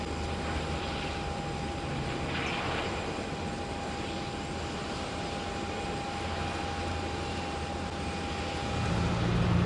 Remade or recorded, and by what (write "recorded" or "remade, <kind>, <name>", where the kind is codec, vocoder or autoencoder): recorded